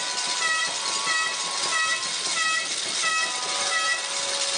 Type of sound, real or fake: real